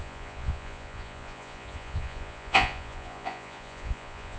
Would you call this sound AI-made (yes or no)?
yes